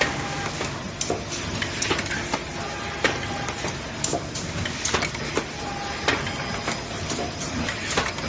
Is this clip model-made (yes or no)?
no